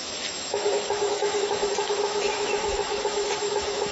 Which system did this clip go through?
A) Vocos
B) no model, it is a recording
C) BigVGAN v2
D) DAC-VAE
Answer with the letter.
D